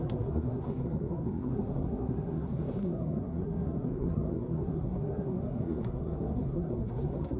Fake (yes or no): yes